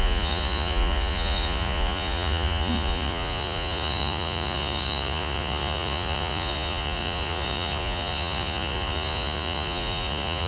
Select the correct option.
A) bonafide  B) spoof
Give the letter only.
B